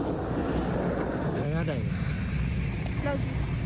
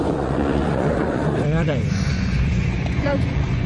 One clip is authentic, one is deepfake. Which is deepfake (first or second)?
second